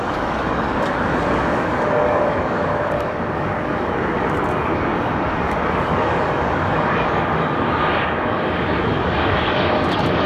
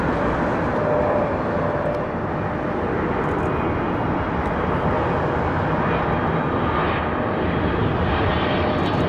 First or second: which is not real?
first